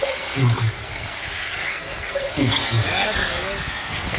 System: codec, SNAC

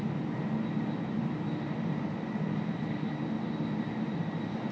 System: none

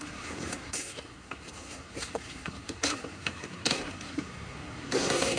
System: codec, SNAC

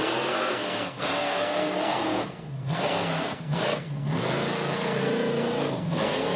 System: codec, SNAC